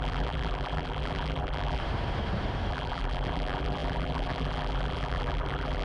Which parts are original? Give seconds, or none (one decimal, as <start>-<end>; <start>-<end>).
1.8-2.7